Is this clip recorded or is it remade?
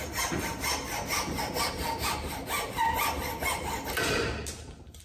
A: recorded